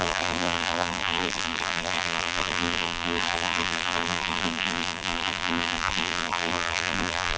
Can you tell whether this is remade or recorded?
remade